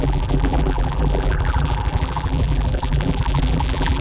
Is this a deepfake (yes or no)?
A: yes